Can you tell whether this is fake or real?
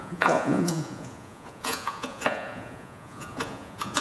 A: fake